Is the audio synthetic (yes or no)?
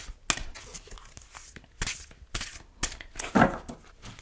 no